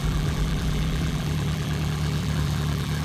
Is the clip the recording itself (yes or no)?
no